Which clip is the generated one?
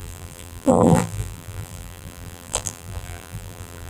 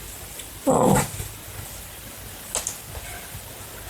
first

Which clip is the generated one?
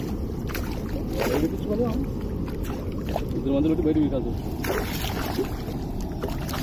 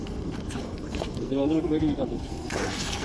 second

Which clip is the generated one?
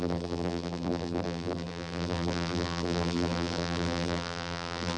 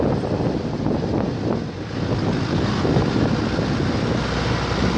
first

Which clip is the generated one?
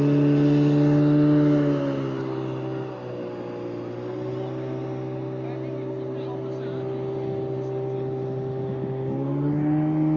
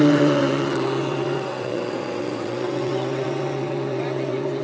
second